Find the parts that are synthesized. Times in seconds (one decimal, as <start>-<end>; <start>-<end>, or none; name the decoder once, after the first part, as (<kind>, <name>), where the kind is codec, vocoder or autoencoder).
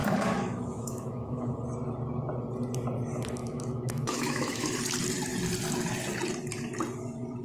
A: 0.0-1.5 (autoencoder, DAC-VAE); 3.4-4.8